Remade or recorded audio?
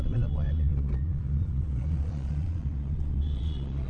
remade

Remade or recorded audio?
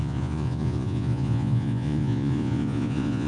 remade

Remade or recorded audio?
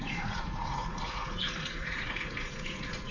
remade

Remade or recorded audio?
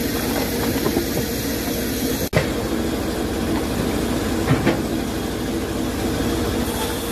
recorded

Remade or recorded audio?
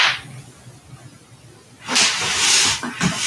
recorded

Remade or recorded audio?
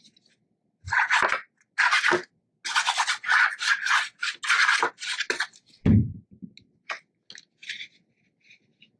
recorded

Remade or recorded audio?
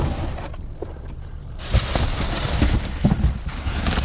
recorded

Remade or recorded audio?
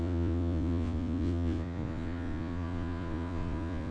remade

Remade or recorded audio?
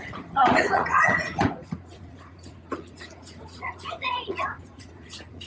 remade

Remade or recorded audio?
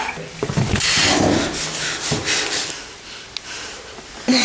recorded